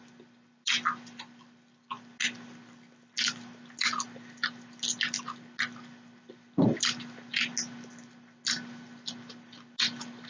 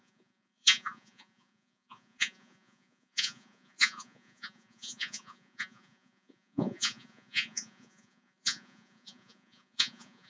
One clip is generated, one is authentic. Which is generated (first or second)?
second